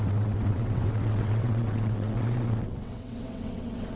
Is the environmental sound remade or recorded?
remade